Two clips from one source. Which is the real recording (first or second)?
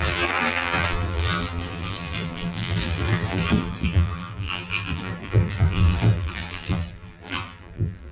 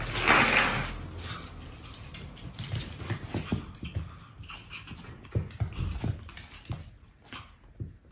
second